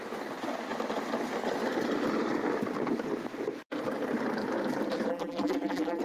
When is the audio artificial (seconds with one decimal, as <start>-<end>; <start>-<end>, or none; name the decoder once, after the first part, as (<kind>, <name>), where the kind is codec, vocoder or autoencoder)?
5.1-6.0 (vocoder, BigVGAN v2)